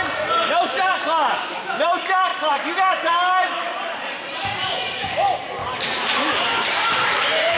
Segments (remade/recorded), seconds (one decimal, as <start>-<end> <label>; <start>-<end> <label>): 0.0-2.3 recorded; 2.3-5.0 remade; 5.0-5.6 recorded; 5.6-7.6 remade